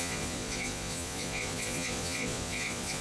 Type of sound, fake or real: fake